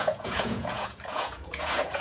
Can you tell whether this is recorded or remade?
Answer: remade